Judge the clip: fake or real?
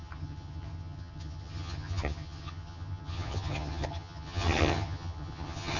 fake